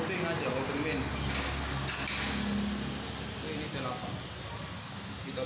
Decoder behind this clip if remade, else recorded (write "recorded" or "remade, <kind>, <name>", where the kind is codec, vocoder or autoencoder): recorded